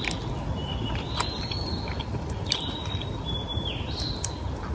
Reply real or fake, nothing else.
real